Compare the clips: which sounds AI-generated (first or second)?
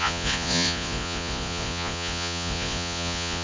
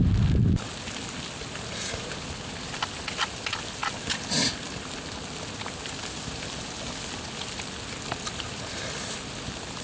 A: first